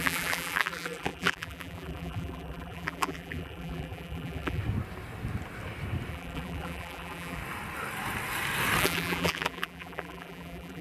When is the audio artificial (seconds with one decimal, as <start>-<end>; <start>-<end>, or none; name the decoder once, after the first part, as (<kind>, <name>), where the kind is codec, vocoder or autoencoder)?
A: 0.0-4.6 (vocoder, BigVGAN v2); 6.1-7.4; 8.8-10.8